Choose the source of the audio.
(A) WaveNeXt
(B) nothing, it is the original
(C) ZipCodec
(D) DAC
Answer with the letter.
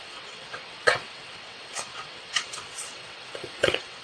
A